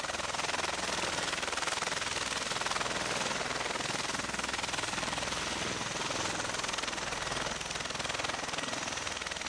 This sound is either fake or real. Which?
real